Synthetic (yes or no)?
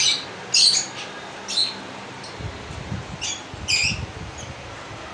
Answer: no